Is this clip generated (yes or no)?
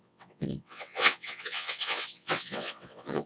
yes